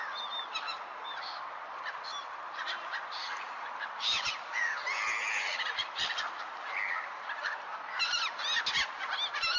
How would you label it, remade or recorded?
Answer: recorded